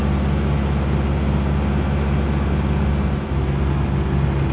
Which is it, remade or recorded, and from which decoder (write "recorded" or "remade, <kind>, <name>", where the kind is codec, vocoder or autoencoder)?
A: recorded